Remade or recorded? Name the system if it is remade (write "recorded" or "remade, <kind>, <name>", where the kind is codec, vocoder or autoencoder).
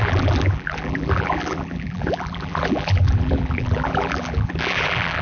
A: remade, vocoder, BigVGAN v2